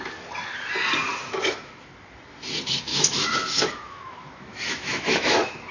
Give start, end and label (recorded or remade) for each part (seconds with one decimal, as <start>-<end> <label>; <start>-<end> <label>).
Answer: 0.0-1.1 recorded; 1.1-1.9 remade; 1.9-2.9 recorded; 2.9-5.7 remade